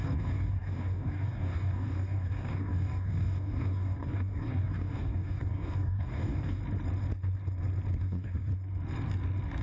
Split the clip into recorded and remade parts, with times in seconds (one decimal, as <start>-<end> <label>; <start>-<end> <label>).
0.0-6.6 remade; 6.6-8.0 recorded; 8.0-8.5 remade; 8.5-9.6 recorded